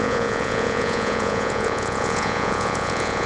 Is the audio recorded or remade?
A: remade